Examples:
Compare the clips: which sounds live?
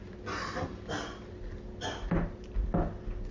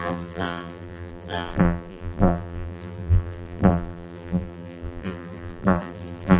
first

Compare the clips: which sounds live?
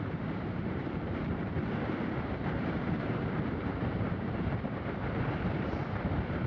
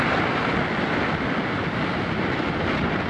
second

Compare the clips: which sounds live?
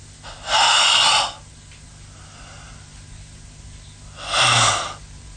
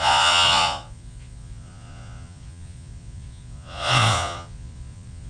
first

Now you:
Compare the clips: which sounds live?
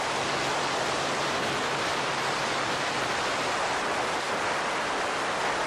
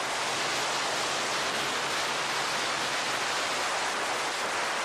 second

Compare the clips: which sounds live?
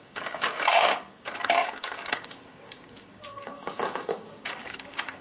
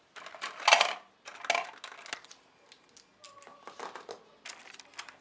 second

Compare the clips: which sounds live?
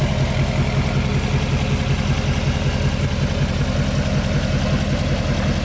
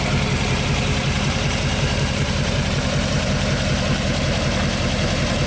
first